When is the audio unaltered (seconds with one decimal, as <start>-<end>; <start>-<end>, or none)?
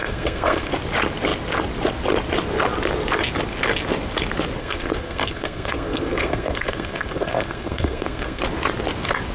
0.7-4.6; 8.4-9.3